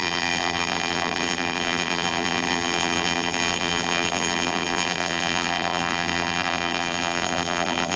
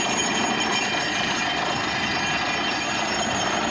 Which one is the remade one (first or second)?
first